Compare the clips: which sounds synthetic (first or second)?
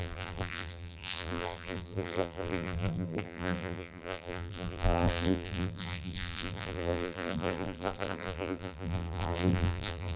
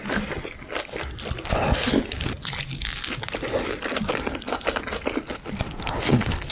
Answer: first